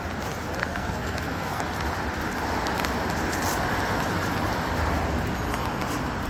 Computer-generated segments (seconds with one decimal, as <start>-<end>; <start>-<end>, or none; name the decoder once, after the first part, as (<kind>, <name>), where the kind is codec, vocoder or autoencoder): 0.6-1.6 (codec, SNAC)